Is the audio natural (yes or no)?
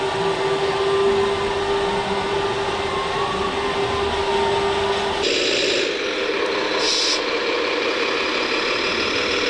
yes